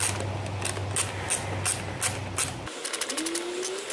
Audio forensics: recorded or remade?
recorded